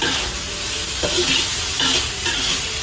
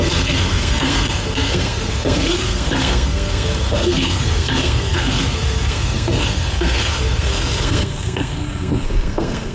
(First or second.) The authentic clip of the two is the first